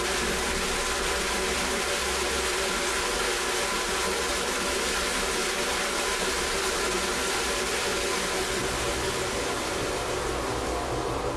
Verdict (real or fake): real